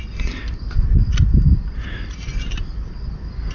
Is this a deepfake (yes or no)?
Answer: no